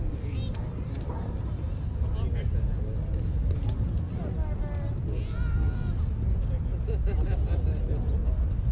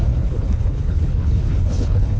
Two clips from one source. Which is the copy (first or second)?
second